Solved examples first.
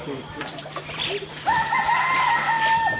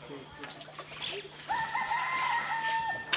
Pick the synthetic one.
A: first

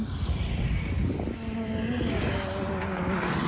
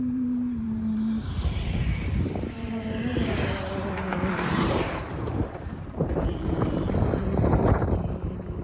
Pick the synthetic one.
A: second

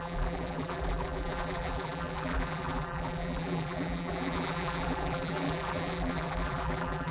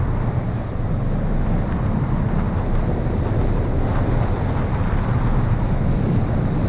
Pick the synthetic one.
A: first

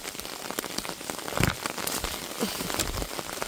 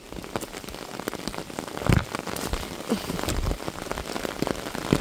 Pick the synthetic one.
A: first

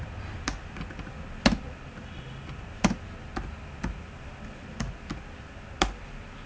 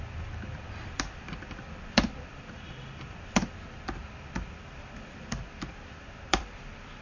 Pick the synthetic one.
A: second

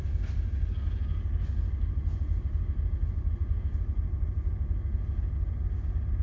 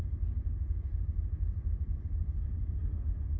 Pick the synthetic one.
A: second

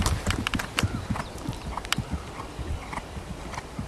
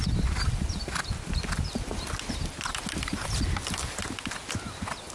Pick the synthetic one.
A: first